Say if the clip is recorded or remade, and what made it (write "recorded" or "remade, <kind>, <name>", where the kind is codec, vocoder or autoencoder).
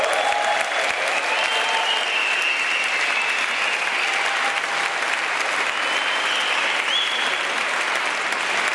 recorded